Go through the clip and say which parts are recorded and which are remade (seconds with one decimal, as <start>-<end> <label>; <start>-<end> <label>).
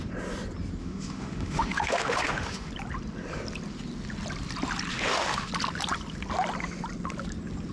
0.0-0.8 recorded; 0.8-2.7 remade; 2.7-4.9 recorded; 4.9-5.5 remade; 5.5-7.7 recorded